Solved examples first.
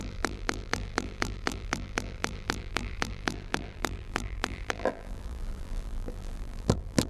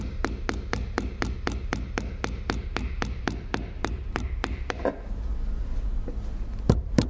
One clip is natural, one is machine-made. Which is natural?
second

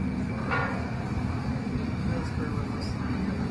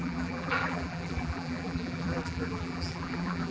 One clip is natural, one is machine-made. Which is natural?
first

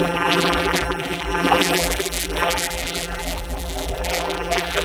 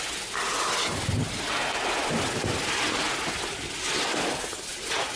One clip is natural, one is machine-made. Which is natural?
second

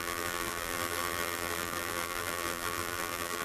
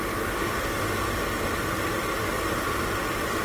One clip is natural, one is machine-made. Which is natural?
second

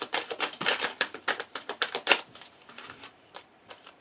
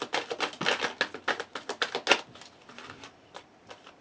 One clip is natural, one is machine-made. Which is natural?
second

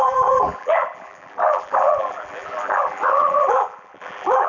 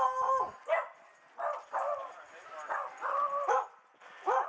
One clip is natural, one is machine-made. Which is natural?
second